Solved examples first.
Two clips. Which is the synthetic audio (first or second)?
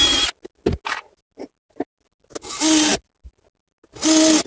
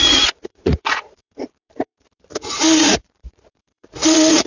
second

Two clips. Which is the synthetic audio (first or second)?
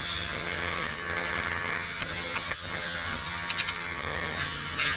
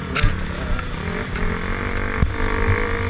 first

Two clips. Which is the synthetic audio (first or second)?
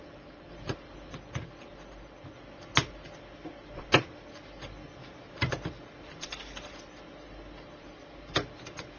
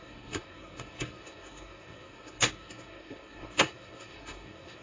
second